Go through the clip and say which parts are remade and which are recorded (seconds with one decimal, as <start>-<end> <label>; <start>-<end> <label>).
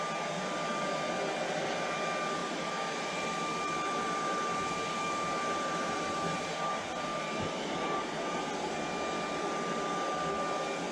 0.0-2.4 recorded; 2.4-6.4 remade; 6.4-7.1 recorded; 7.1-8.5 remade; 8.5-10.9 recorded